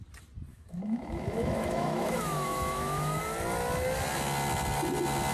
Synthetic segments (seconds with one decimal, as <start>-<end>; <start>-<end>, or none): 0.5-3.2

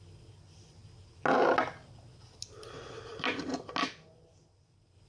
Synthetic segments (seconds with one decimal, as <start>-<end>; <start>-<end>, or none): none

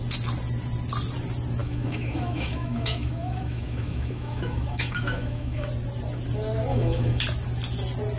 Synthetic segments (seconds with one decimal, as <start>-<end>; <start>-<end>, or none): 1.6-5.7; 6.7-7.2

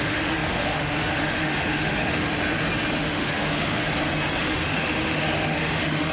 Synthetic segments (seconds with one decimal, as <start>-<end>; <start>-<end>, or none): 0.0-2.3; 2.9-3.8; 4.4-6.1

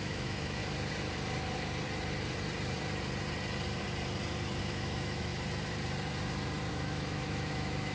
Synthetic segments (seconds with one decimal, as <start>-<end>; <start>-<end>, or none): 0.0-0.6; 4.6-5.3; 6.7-7.9

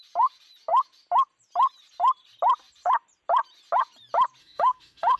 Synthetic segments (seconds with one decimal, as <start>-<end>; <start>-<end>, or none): 4.4-5.2

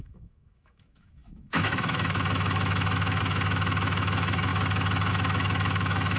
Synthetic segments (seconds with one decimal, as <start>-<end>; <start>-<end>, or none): 0.0-4.5; 5.1-6.2

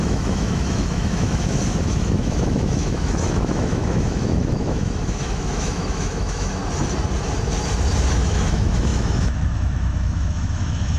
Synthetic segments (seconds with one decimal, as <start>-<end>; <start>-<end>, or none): 0.0-6.6; 8.1-11.0